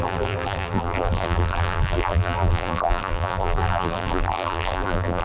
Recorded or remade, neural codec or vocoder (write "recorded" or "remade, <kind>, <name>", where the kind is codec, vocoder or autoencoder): remade, vocoder, BigVGAN v2